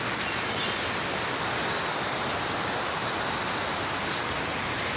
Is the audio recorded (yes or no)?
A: yes